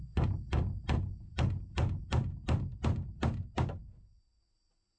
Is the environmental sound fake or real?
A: real